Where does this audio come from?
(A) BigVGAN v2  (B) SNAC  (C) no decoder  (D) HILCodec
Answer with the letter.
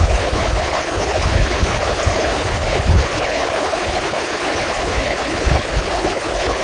D